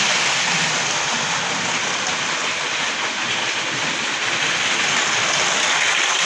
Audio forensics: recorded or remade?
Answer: recorded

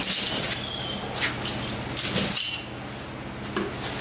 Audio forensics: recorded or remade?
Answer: recorded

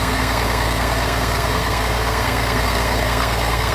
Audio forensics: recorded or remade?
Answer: remade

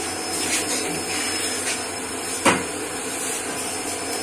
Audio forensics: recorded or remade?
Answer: remade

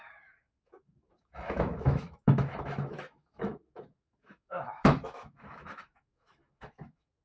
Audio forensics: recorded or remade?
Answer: remade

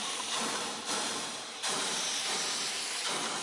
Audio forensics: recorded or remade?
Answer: remade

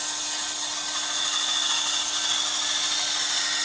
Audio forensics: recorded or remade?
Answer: recorded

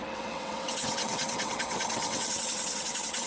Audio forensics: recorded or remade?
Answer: remade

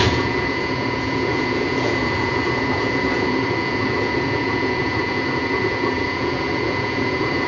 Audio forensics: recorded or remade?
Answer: remade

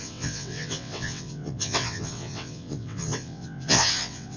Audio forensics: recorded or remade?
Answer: remade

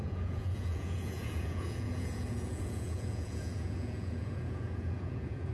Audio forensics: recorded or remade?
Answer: remade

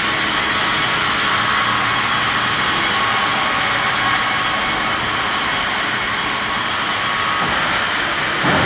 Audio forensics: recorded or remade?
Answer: recorded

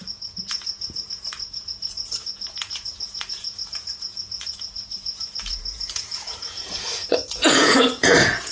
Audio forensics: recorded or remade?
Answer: remade